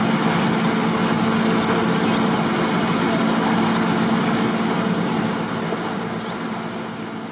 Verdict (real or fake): real